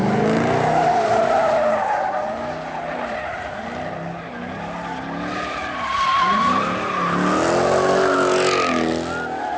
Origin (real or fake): real